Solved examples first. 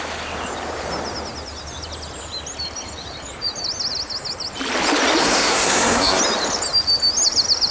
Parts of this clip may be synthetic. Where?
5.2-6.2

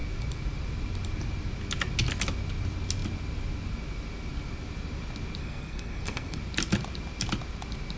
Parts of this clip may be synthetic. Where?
5.4-6.4

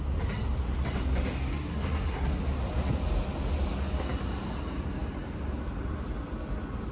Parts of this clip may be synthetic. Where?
1.5-2.4

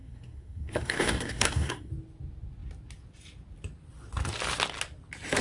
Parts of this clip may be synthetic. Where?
0.0-1.9

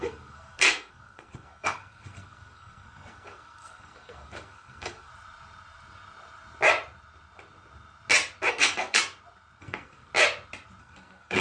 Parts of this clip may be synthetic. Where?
0.0-5.1; 8.5-9.0; 9.6-10.1; 10.8-11.4